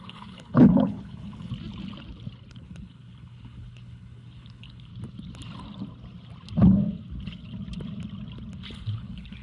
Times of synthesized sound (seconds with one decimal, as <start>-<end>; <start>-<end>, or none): 0.0-1.5; 2.5-4.9; 8.7-9.4